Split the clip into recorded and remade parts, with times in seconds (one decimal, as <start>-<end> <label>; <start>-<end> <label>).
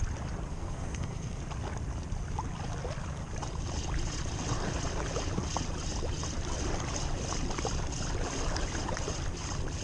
0.0-0.5 recorded; 0.5-1.4 remade; 1.4-9.8 recorded